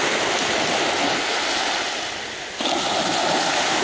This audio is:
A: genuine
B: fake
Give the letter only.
A